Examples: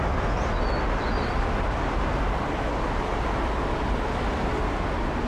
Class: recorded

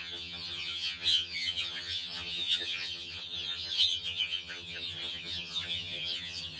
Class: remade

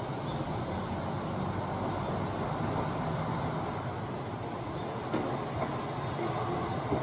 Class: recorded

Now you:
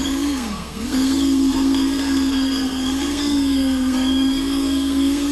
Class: remade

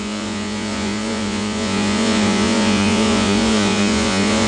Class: remade